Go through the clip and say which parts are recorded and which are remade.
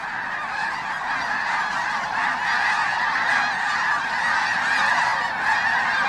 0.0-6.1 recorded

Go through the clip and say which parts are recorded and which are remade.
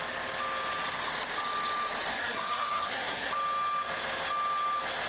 0.0-2.1 recorded; 2.1-3.3 remade; 3.3-5.1 recorded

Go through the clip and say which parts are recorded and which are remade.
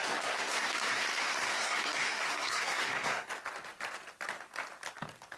0.0-3.3 remade; 3.3-5.4 recorded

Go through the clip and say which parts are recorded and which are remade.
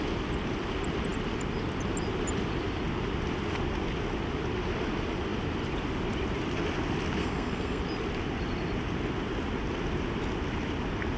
0.0-7.2 recorded; 7.2-7.8 remade; 7.8-11.2 recorded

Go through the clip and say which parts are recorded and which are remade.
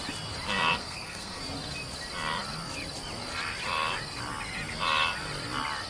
0.0-0.8 recorded; 0.8-1.4 remade; 1.4-5.9 recorded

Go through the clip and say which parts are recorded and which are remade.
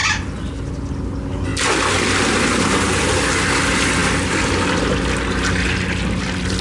0.0-6.6 recorded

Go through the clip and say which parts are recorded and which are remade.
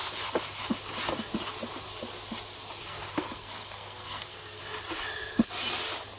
0.0-2.8 recorded; 2.8-4.6 remade; 4.6-6.2 recorded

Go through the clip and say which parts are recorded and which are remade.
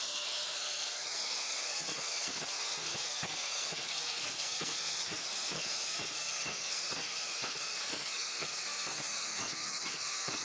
0.0-10.4 remade